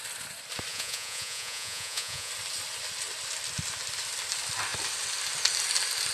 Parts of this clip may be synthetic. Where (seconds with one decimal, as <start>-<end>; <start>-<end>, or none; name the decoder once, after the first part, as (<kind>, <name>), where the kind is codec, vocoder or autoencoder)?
0.7-2.3 (vocoder, Vocos)